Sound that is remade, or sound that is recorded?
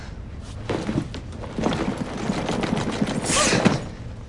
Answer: recorded